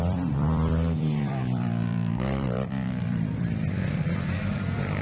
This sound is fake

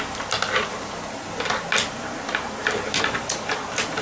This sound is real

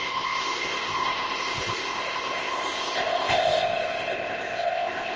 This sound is fake